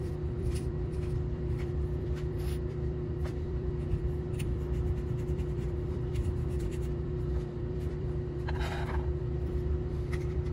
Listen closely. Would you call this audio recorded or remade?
remade